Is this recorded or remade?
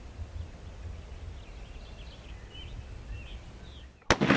recorded